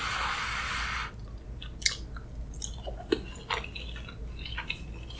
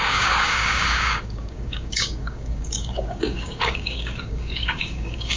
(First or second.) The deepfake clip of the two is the second